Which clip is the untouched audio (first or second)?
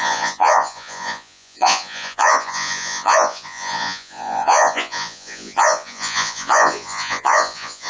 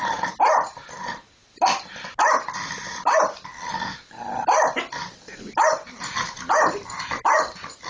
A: second